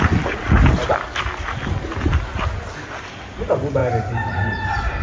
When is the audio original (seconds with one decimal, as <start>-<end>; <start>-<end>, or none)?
0.0-5.0